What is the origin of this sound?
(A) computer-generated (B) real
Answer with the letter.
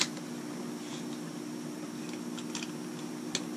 B